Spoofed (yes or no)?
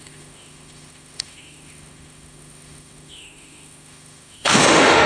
yes